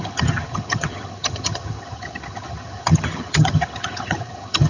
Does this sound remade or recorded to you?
remade